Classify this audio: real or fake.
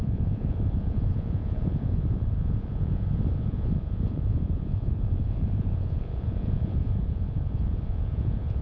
fake